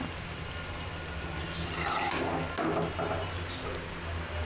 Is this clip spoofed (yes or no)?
no